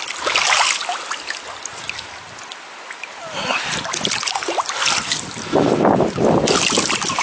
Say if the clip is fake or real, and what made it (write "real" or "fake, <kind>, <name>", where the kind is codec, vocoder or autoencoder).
real